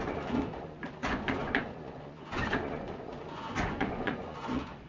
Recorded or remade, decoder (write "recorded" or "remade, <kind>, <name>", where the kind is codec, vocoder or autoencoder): remade, vocoder, Vocos